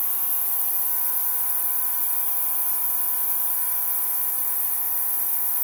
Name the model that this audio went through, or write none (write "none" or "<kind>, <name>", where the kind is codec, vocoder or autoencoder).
vocoder, BigVGAN v2